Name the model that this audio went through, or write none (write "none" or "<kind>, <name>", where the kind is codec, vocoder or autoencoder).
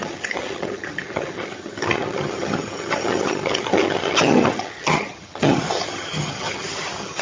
vocoder, HiFi-GAN